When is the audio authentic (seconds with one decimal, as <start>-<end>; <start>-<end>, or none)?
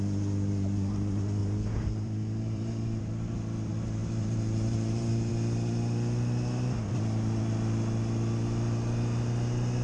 0.0-1.4; 3.0-4.0; 5.3-9.8